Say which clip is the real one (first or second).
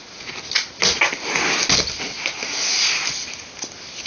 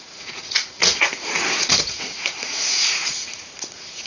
first